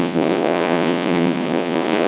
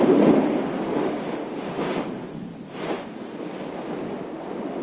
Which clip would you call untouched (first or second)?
second